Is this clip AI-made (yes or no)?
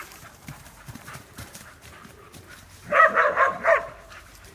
yes